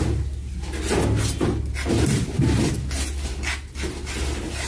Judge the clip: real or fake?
real